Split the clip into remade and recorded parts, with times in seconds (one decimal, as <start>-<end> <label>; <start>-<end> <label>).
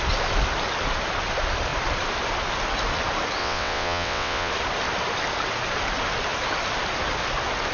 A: 0.0-3.4 recorded; 3.4-4.5 remade; 4.5-7.7 recorded